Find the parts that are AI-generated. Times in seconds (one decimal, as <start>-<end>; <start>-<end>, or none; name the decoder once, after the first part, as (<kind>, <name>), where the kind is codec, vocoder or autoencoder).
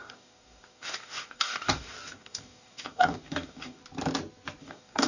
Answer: 0.0-3.8 (codec, DAC); 4.6-5.1